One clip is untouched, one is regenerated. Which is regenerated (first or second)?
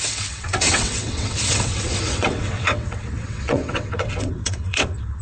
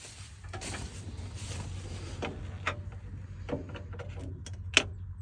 first